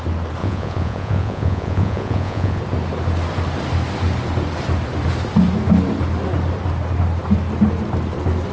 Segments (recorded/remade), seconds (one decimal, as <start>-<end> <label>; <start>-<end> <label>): 0.0-0.4 recorded; 0.4-2.6 remade; 2.6-8.5 recorded